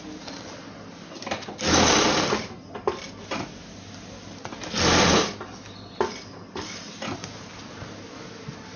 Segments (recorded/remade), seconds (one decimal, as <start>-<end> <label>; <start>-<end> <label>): 0.0-8.8 recorded

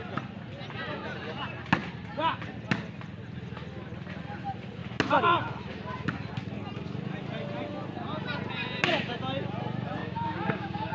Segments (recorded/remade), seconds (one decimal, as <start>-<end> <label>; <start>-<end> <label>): 0.0-10.0 recorded; 10.0-10.9 remade